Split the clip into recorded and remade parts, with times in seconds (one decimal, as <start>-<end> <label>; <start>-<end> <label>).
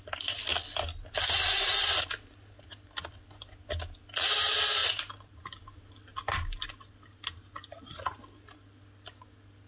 0.0-9.7 recorded